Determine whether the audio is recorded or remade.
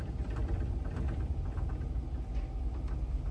recorded